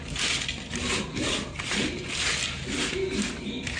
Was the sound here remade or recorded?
recorded